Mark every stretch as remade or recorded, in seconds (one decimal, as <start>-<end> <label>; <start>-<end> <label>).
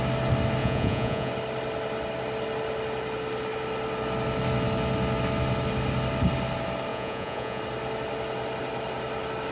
0.0-0.6 recorded; 0.6-1.3 remade; 1.3-6.9 recorded; 6.9-7.6 remade; 7.6-9.5 recorded